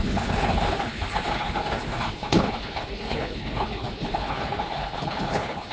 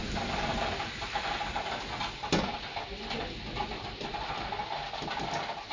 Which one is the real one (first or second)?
second